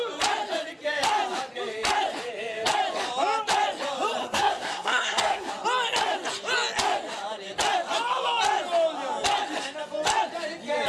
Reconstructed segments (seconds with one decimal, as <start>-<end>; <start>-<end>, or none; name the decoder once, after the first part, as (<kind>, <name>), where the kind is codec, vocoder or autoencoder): 4.2-5.5 (codec, SNAC)